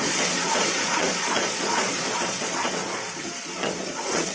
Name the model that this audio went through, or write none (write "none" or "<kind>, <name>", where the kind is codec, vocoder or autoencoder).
vocoder, Vocos